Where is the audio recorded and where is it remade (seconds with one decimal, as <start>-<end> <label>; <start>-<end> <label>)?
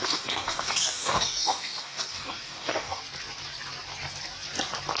0.0-3.0 remade; 3.0-5.0 recorded